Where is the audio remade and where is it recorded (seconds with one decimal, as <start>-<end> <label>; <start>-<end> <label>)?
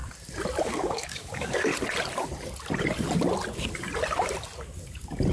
0.0-0.6 recorded; 0.6-1.7 remade; 1.7-5.3 recorded